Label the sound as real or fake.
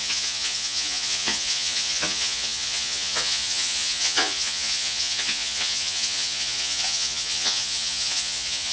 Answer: fake